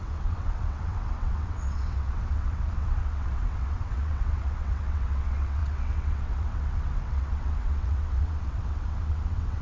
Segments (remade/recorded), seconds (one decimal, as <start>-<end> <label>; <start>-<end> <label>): 0.0-9.6 remade